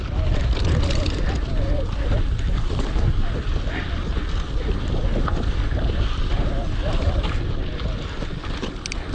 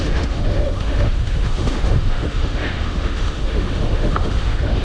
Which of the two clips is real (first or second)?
first